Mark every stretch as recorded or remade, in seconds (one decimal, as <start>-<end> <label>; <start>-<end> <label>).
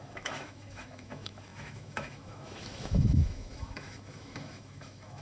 0.0-5.2 remade